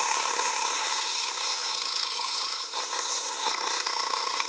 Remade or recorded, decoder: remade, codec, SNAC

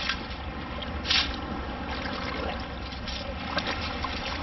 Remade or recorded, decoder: recorded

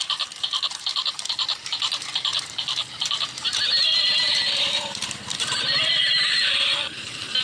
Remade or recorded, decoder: remade, vocoder, BigVGAN v2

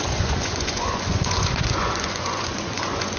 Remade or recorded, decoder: remade, vocoder, Vocos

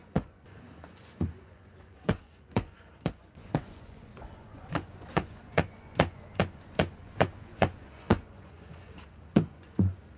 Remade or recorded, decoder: remade, vocoder, Vocos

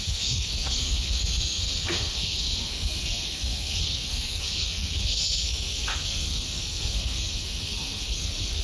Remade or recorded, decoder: remade, codec, SNAC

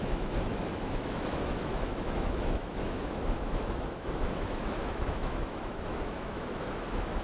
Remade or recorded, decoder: remade, autoencoder, DAC-VAE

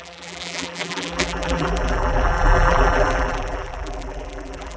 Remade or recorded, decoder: remade, vocoder, BigVGAN v2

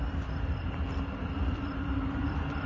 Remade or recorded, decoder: remade, vocoder, BigVGAN v2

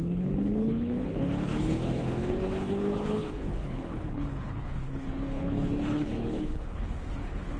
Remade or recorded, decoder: remade, codec, HILCodec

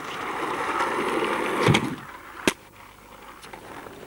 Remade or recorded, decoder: recorded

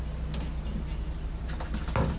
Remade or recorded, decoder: recorded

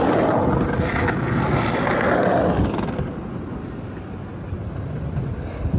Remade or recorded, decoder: recorded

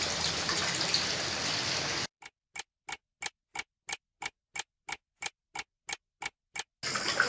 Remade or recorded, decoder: recorded